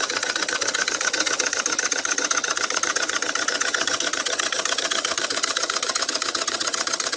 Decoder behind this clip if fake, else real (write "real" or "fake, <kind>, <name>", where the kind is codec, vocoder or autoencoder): fake, vocoder, HiFi-GAN